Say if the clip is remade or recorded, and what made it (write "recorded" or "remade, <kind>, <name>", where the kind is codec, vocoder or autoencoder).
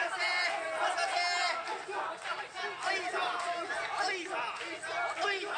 recorded